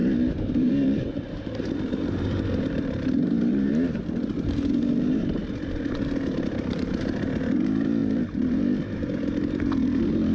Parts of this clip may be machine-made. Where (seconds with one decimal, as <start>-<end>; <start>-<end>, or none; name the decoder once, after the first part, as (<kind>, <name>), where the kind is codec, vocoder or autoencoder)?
0.0-5.4 (vocoder, BigVGAN v2); 6.8-10.3